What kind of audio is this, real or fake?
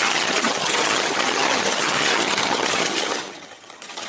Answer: fake